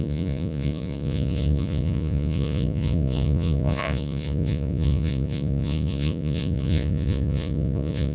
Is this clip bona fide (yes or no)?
no